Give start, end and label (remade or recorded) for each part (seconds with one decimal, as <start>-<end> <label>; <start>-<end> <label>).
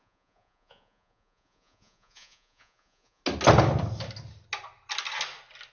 0.0-3.2 remade; 3.2-5.7 recorded